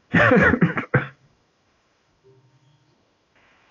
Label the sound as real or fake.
fake